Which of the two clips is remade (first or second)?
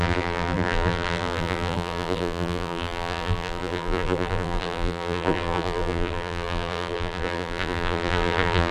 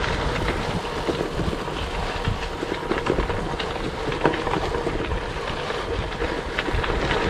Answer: first